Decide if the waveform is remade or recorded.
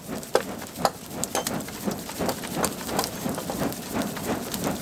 recorded